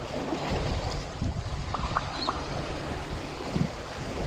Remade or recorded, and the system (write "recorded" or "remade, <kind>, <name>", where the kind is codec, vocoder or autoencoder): remade, vocoder, BigVGAN v2